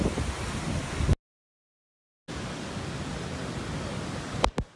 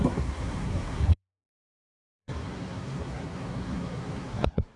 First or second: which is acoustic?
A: first